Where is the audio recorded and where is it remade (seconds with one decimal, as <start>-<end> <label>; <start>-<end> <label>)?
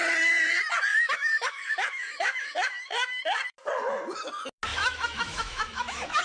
0.0-0.9 recorded; 0.9-3.2 remade; 3.2-4.7 recorded; 4.7-6.2 remade